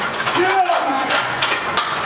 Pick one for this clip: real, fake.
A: fake